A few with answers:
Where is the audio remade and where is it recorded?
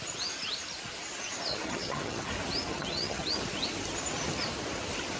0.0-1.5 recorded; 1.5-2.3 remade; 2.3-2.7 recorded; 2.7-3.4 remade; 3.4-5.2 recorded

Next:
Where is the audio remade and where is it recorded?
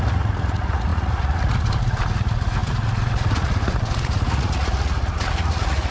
0.0-5.9 remade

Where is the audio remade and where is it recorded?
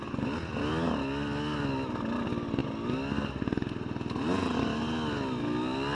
0.0-5.9 recorded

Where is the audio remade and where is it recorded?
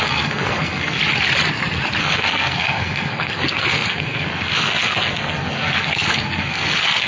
0.0-1.0 remade; 1.0-2.0 recorded; 2.0-7.1 remade